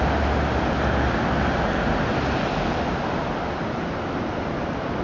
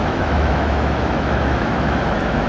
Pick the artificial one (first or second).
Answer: second